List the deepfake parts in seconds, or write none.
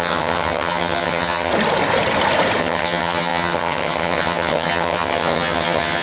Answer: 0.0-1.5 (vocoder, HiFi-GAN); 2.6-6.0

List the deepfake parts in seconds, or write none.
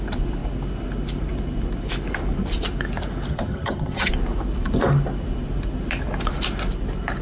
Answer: 3.3-4.1 (vocoder, HiFi-GAN)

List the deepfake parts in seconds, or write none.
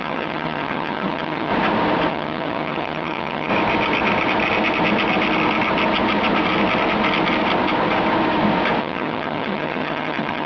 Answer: 0.0-1.5 (vocoder, HiFi-GAN); 2.1-3.5; 8.8-10.5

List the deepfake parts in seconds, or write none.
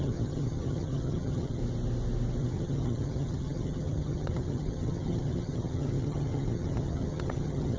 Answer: 0.0-1.6 (vocoder, HiFi-GAN); 2.4-7.8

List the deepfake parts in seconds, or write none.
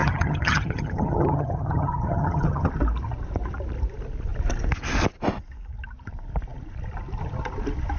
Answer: 0.0-2.7 (vocoder, HiFi-GAN)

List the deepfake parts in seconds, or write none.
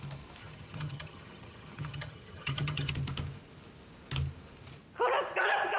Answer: 0.4-2.9 (vocoder, HiFi-GAN)